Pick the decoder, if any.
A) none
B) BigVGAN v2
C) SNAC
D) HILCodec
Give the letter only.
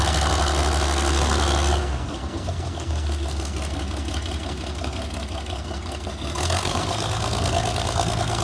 C